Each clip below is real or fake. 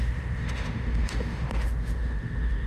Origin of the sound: fake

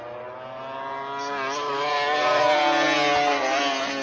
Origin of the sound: real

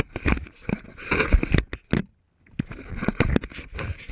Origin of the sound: real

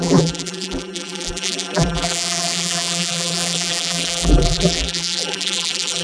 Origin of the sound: fake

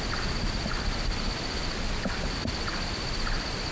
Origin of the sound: real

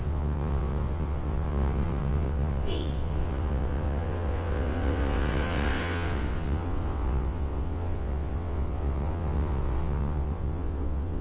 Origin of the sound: fake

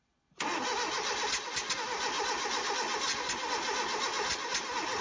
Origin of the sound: real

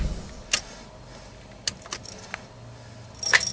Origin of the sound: real